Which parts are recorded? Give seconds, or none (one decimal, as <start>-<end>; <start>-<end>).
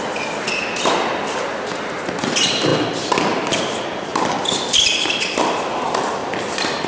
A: 0.0-6.9